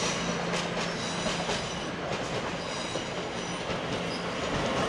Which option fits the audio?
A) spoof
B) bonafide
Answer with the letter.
B